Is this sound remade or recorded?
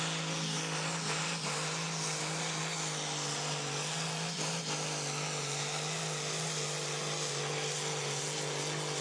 recorded